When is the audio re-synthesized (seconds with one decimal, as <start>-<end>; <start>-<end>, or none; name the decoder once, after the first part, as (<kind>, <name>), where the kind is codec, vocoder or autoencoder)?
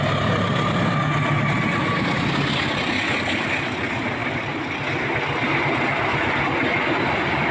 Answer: none